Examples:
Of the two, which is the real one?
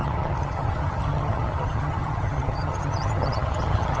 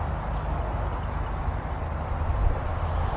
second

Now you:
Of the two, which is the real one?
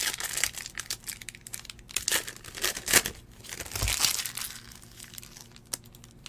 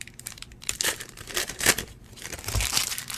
first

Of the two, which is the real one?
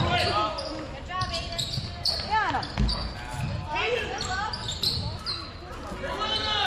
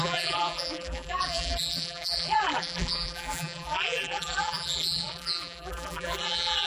first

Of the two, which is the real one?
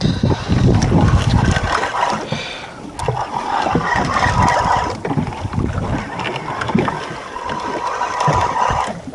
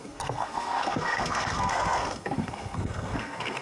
first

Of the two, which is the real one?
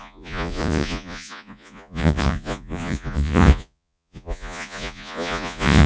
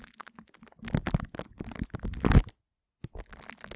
second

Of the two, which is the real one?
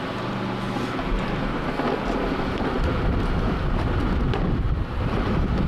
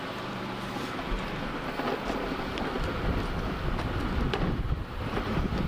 first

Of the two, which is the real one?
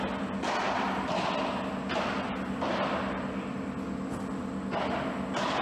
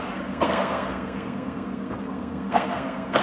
first